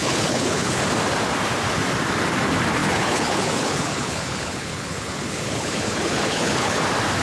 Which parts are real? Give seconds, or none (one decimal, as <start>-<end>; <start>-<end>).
0.8-2.8; 6.8-7.2